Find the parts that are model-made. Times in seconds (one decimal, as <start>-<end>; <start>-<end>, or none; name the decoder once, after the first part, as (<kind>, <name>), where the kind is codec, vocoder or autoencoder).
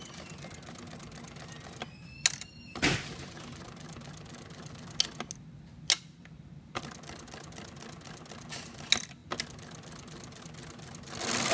none